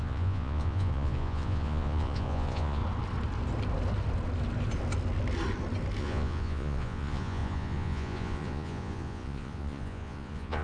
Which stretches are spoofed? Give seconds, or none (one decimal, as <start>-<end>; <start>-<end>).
0.0-2.8; 6.0-10.6